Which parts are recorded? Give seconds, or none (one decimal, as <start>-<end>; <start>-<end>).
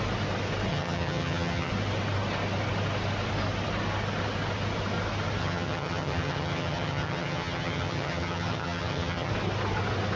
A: 0.0-0.7; 1.7-5.4; 9.3-10.2